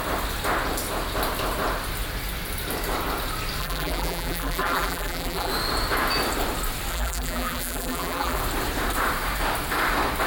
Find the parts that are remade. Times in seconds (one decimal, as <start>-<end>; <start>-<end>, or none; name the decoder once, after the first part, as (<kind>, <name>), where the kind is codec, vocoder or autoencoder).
3.6-5.5 (vocoder, BigVGAN v2); 6.9-8.4

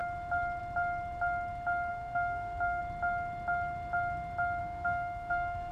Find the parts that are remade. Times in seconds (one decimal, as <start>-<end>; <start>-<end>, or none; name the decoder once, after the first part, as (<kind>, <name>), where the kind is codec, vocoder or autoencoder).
1.9-2.8 (codec, SNAC); 4.6-5.7